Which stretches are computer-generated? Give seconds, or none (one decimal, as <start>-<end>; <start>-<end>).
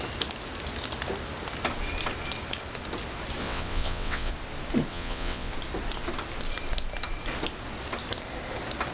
3.4-4.3; 4.9-5.5